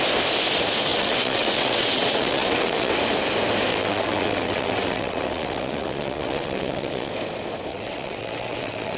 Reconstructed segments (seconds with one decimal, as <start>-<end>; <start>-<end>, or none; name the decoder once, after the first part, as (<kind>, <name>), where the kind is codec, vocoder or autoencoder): 0.9-2.9 (vocoder, WaveNeXt); 3.7-7.1; 7.7-9.0